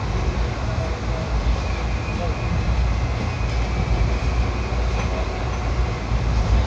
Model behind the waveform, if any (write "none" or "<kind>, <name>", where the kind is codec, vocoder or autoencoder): none